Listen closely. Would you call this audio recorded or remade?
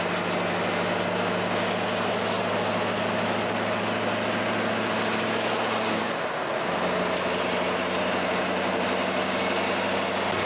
recorded